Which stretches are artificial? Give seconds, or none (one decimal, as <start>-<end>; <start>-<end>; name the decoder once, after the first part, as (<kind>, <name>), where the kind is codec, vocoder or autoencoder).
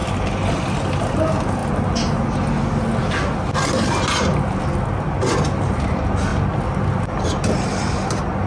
none